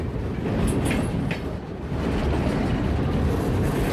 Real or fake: real